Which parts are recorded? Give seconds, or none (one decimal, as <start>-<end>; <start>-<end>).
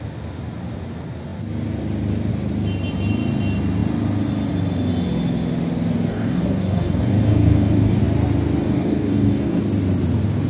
0.0-6.1; 8.0-8.6; 9.6-10.5